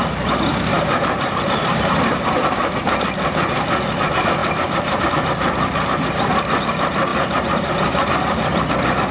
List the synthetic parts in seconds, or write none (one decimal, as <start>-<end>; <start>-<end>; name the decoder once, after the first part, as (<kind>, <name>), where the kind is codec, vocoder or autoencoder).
0.7-2.7 (vocoder, BigVGAN v2); 4.4-5.1; 7.1-8.7

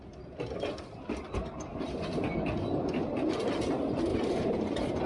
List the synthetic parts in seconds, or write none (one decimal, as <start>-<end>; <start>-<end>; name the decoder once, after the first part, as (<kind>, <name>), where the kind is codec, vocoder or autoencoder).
4.1-5.1 (vocoder, BigVGAN v2)

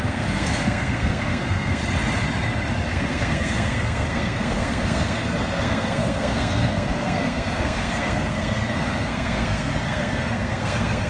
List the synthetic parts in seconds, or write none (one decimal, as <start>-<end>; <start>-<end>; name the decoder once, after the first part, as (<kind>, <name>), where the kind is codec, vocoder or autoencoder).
0.0-1.8 (codec, SNAC); 2.9-11.1

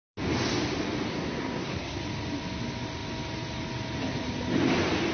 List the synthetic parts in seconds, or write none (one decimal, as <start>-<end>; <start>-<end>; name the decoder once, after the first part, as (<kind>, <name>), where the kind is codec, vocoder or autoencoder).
1.1-2.0 (codec, SNAC)

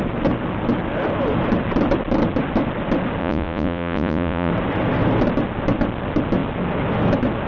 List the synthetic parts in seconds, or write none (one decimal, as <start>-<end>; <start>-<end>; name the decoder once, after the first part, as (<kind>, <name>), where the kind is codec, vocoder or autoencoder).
3.2-4.5 (vocoder, Vocos)